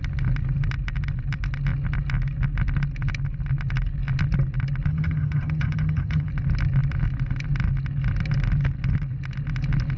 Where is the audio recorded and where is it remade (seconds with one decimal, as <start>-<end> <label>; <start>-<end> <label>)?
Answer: 0.0-4.9 recorded; 4.9-6.3 remade; 6.3-10.0 recorded